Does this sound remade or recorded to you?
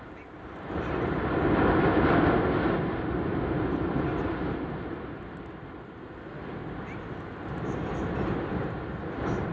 recorded